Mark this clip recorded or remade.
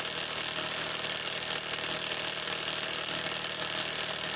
recorded